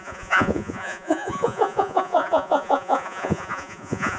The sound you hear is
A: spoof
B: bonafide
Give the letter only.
A